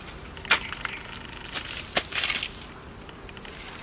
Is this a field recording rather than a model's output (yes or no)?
yes